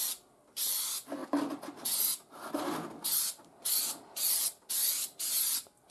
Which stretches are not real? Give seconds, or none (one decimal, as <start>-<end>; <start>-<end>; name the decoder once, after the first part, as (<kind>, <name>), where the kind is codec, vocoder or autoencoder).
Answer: none